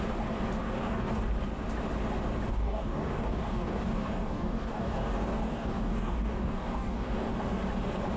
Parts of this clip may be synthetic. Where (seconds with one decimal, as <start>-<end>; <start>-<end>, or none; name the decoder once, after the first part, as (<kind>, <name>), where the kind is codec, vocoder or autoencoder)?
0.6-1.1 (codec, DAC); 2.5-7.3